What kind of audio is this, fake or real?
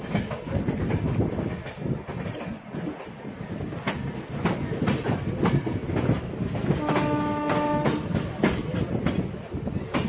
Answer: real